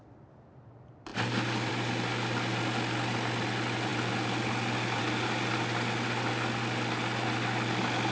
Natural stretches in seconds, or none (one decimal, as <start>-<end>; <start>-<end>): 0.0-8.1